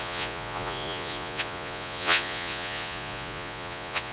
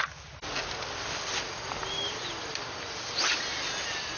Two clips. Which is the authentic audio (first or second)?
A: second